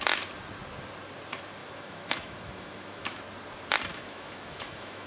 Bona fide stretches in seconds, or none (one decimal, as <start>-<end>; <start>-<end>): 0.0-1.6; 3.2-3.9

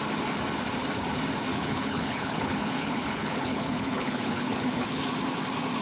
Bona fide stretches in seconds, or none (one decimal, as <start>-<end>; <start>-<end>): 0.0-1.5; 5.0-5.8